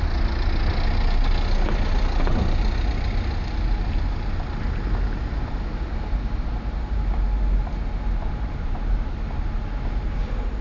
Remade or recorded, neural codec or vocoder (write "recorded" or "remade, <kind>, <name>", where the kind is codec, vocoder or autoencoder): recorded